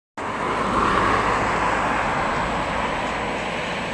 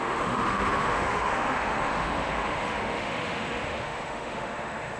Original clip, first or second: first